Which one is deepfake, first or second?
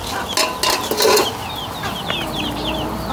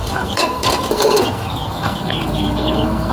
second